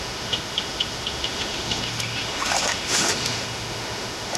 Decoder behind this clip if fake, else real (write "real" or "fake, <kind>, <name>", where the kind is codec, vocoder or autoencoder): fake, autoencoder, DAC-VAE